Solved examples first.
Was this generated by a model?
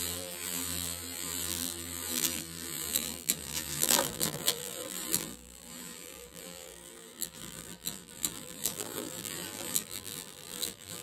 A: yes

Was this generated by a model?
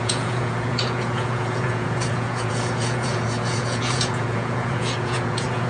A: yes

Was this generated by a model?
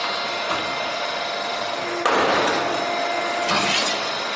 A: no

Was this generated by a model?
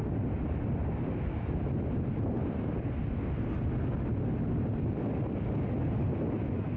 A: no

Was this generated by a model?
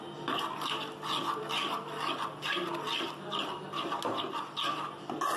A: no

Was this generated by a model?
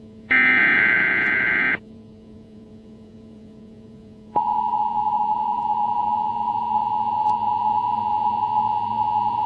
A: yes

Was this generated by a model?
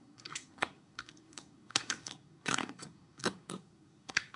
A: yes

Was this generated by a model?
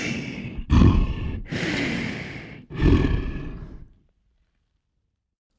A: yes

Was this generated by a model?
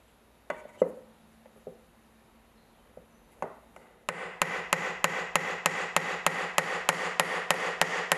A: no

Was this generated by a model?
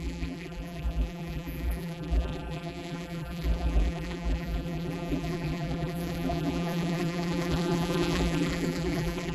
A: yes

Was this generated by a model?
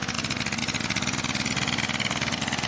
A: no